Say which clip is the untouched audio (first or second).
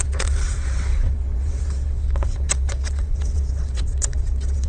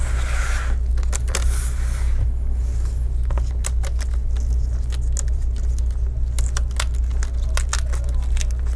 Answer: second